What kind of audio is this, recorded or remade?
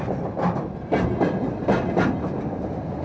recorded